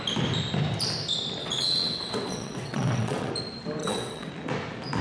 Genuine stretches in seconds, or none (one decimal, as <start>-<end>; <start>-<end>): 0.0-1.4; 3.3-3.8; 4.3-5.0